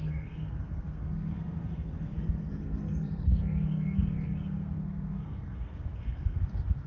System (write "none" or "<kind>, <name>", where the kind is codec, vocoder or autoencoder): codec, SNAC